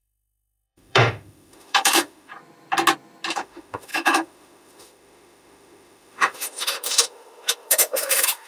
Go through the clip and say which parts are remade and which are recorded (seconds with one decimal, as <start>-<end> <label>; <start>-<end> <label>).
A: 0.0-2.3 remade; 2.3-3.3 recorded; 3.3-8.5 remade